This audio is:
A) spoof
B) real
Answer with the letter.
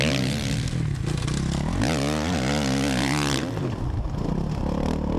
B